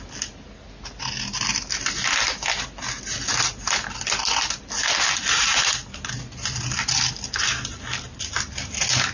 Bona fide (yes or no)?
yes